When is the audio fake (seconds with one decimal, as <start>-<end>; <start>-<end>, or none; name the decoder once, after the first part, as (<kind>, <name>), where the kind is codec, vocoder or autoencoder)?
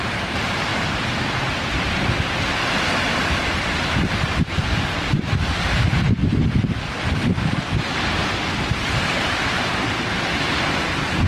0.0-0.7 (vocoder, BigVGAN v2); 3.4-6.2; 8.6-11.3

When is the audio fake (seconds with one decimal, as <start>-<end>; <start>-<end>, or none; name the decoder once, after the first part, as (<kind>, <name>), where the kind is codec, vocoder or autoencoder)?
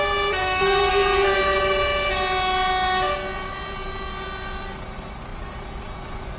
0.4-0.9 (codec, SNAC)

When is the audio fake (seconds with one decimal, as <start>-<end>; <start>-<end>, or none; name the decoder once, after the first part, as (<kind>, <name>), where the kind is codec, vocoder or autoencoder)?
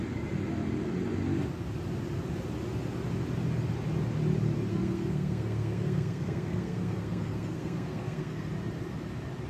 4.7-8.5 (codec, SNAC)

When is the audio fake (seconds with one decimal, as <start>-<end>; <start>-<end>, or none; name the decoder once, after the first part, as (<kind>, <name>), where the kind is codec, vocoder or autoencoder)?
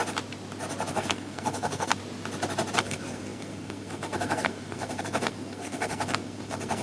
0.9-2.0 (codec, SNAC); 2.8-6.8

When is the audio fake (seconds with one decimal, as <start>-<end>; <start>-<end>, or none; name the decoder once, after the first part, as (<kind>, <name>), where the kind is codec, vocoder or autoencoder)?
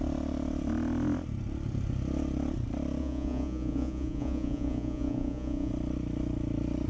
3.0-5.7 (vocoder, Vocos)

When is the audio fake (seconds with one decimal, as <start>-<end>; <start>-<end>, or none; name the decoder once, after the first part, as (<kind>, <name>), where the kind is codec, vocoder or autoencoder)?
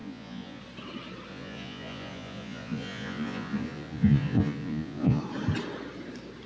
0.0-0.6 (vocoder, Vocos); 1.3-5.2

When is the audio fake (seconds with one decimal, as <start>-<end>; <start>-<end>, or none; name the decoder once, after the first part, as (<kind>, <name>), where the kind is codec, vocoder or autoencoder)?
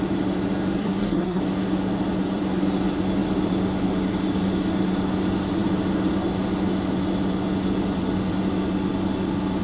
0.8-1.4 (codec, SNAC)